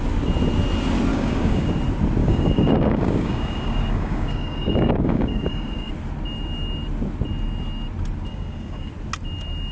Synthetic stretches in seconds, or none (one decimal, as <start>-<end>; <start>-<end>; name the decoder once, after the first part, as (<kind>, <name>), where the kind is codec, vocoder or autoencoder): 1.1-1.7 (codec, DAC); 2.2-5.9; 8.3-8.9